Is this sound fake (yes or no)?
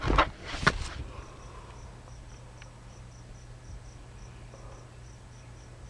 no